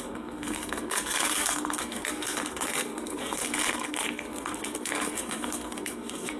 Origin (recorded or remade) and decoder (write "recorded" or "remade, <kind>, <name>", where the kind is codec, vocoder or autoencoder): remade, codec, SNAC